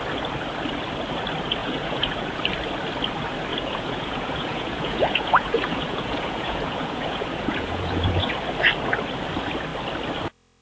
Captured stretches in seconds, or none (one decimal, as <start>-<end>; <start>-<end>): 0.0-1.6; 2.4-3.5; 8.3-10.6